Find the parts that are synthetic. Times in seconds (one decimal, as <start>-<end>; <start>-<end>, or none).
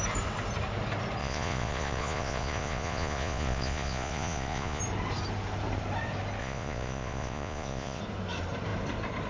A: 1.2-4.8; 6.4-8.0